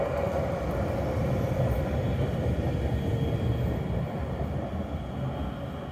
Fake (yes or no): no